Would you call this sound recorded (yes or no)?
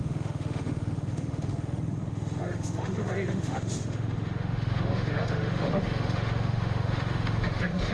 no